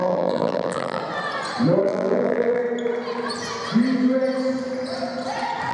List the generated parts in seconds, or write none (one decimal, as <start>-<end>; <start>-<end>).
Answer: 0.0-1.0; 1.8-2.6